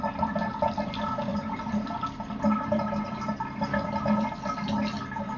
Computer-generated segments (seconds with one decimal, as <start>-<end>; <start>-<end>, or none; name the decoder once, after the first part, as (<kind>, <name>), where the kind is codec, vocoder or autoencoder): 1.3-3.8 (vocoder, BigVGAN v2)